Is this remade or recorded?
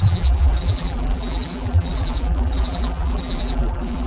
remade